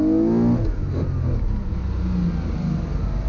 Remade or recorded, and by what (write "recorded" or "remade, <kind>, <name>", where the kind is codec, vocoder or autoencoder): recorded